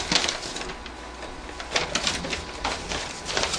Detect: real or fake real